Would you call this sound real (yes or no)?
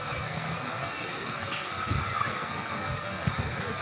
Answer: no